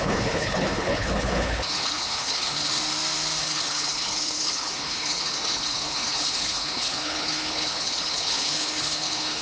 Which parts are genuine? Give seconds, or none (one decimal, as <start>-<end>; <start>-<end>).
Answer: 2.8-3.4